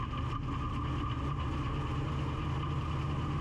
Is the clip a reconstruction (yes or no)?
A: no